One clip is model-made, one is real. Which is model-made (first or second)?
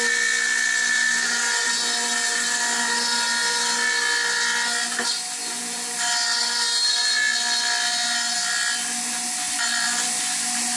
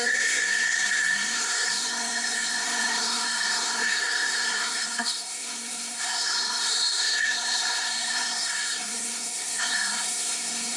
second